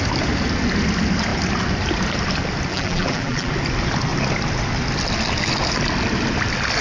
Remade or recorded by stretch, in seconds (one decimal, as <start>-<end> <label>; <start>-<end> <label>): 0.0-2.7 recorded; 2.7-3.5 remade; 3.5-6.8 recorded